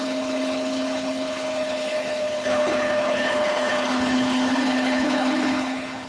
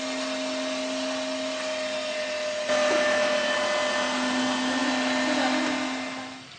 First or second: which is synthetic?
first